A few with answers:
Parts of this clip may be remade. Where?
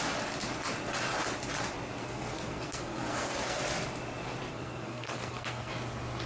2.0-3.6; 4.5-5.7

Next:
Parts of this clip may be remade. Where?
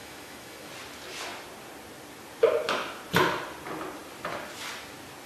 0.0-0.7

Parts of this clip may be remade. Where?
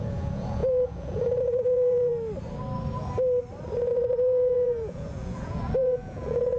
0.0-2.1; 3.9-6.6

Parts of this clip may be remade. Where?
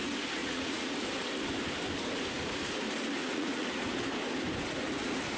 0.4-0.9; 3.2-4.0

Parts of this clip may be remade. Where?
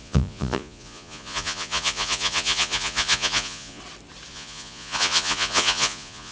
0.0-3.8; 4.3-6.3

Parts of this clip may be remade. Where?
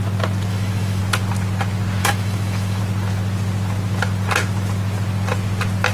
0.5-1.0; 2.0-2.8